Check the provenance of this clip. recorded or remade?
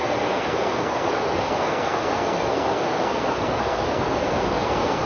remade